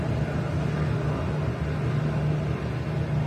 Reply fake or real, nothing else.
real